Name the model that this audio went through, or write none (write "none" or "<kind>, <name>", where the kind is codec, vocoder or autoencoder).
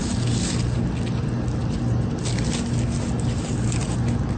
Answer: none